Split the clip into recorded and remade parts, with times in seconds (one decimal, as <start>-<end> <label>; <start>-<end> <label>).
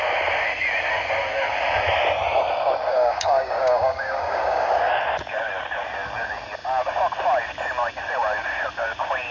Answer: 0.0-2.9 recorded; 2.9-5.0 remade; 5.0-9.3 recorded